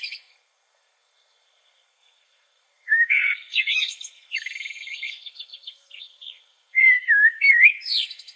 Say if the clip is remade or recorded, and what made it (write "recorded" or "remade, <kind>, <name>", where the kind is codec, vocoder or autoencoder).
remade, codec, SNAC